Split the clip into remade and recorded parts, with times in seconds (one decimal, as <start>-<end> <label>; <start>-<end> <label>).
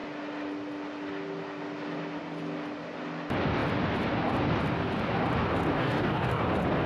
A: 0.0-5.8 recorded; 5.8-6.4 remade; 6.4-6.9 recorded